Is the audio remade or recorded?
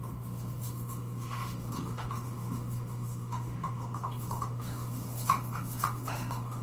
remade